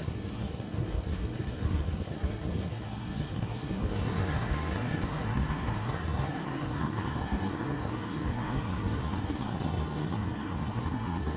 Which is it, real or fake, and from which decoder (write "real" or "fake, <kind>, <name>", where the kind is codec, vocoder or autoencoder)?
fake, codec, SNAC